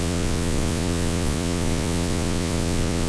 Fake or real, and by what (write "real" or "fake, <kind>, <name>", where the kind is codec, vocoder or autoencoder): fake, vocoder, Vocos